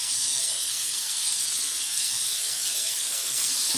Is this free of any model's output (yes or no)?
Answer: no